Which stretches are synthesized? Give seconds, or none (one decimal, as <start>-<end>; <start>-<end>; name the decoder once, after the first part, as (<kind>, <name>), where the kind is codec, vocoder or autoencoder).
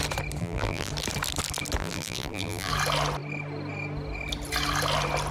0.4-0.9 (vocoder, BigVGAN v2); 1.8-2.7